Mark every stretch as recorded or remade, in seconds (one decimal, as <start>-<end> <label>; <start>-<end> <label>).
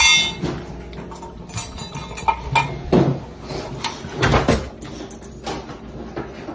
0.0-6.5 recorded